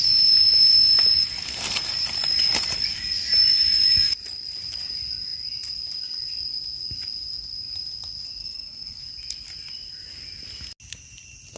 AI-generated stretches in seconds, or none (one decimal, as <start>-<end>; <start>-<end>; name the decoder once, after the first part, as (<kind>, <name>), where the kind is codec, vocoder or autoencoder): 8.4-9.0 (codec, SNAC)